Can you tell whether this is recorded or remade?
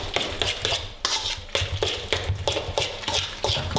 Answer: recorded